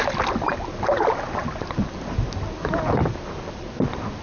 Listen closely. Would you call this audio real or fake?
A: real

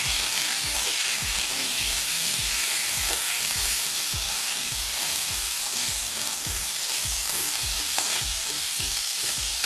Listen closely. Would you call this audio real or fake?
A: fake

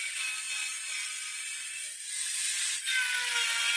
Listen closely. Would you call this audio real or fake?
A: real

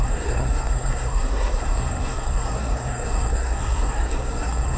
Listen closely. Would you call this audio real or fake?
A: fake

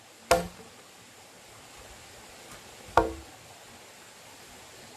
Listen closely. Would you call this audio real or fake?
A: real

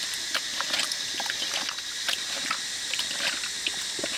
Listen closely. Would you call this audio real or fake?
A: real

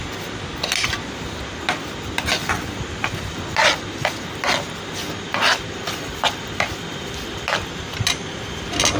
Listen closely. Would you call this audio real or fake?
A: real